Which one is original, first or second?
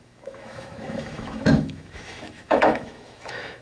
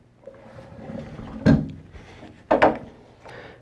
second